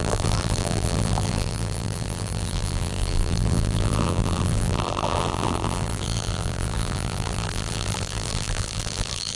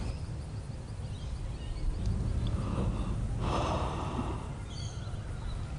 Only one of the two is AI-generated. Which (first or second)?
first